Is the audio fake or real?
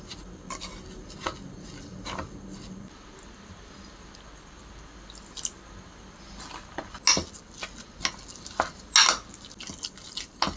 real